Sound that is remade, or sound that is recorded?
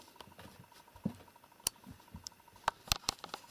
recorded